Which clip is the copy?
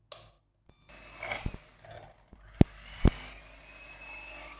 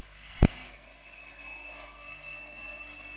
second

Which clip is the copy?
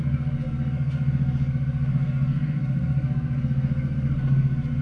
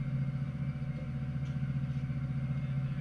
first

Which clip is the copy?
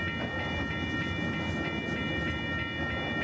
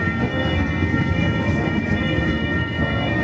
second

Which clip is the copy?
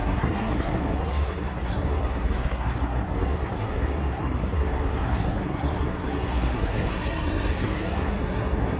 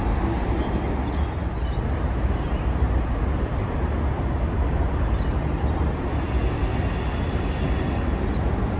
first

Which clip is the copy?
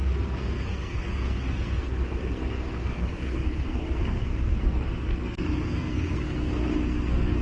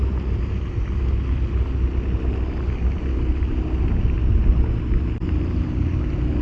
first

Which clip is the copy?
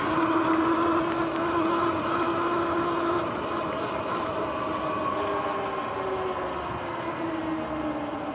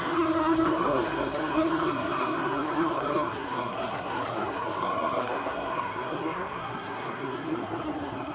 second